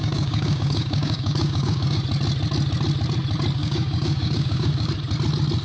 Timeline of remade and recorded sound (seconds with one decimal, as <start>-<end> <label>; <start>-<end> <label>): 0.0-2.0 remade; 2.0-3.6 recorded; 3.6-4.9 remade; 4.9-5.6 recorded